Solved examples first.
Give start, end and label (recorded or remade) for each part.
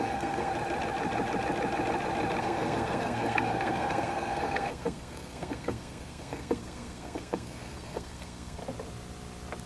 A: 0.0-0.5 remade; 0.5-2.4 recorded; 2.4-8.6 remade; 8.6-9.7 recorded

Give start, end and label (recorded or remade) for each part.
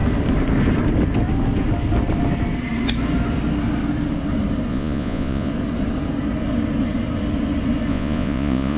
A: 0.0-4.7 recorded; 4.7-5.5 remade; 5.5-7.9 recorded; 7.9-8.8 remade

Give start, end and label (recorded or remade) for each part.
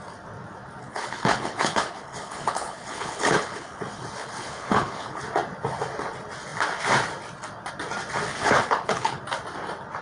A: 0.0-0.8 recorded; 0.8-3.8 remade; 3.8-4.2 recorded; 4.2-5.2 remade; 5.2-8.3 recorded; 8.3-9.2 remade; 9.2-10.0 recorded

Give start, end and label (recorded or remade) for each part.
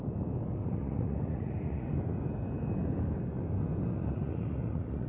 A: 0.0-0.6 recorded; 0.6-1.9 remade; 1.9-3.9 recorded; 3.9-5.1 remade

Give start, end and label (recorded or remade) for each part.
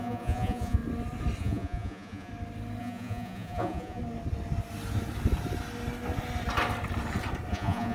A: 0.0-0.8 remade; 0.8-1.4 recorded; 1.4-2.3 remade; 2.3-2.8 recorded; 2.8-4.0 remade; 4.0-7.5 recorded; 7.5-7.9 remade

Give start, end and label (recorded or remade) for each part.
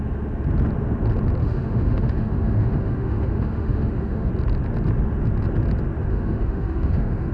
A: 0.0-1.4 recorded; 1.4-4.3 remade; 4.3-6.1 recorded; 6.1-7.3 remade